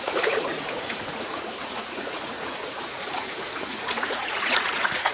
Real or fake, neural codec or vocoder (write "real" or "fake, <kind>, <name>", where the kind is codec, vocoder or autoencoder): fake, vocoder, Vocos